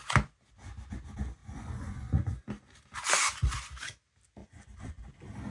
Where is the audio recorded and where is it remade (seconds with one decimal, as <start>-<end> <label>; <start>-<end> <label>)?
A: 0.0-1.4 recorded; 1.4-2.4 remade; 2.4-4.4 recorded; 4.4-5.0 remade; 5.0-5.5 recorded

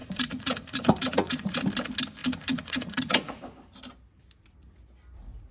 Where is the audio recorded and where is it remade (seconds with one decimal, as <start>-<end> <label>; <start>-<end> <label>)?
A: 0.0-1.6 remade; 1.6-2.2 recorded; 2.2-3.4 remade; 3.4-5.5 recorded

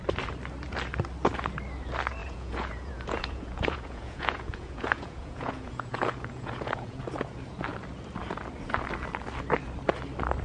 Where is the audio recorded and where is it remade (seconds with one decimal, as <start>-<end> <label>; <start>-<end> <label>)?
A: 0.0-2.2 recorded; 2.2-7.0 remade; 7.0-10.4 recorded

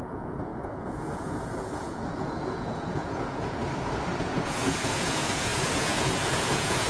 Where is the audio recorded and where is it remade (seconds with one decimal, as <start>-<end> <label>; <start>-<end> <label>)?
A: 0.0-3.6 remade; 3.6-4.2 recorded; 4.2-6.9 remade

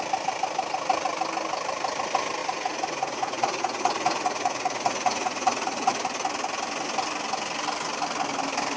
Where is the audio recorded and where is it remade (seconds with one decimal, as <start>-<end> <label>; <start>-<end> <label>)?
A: 0.0-2.4 recorded; 2.4-5.9 remade; 5.9-8.8 recorded

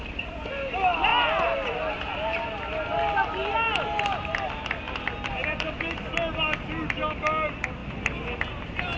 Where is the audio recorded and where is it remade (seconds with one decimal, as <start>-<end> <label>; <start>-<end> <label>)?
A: 0.0-9.0 recorded

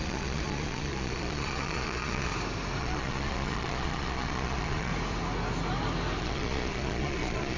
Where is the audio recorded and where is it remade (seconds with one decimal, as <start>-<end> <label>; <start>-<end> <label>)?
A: 0.0-2.3 remade; 2.3-2.8 recorded; 2.8-4.9 remade; 4.9-6.2 recorded; 6.2-7.6 remade